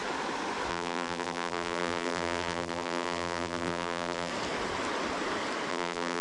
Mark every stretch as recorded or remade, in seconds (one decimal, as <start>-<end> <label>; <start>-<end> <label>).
0.0-0.7 recorded; 0.7-4.3 remade; 4.3-5.7 recorded; 5.7-6.2 remade